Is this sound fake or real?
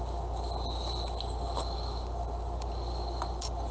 real